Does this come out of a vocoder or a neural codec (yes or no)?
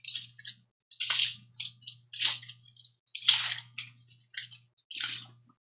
no